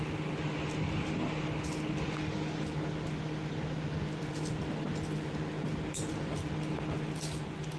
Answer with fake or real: real